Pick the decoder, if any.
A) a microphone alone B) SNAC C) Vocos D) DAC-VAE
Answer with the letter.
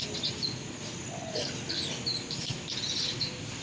A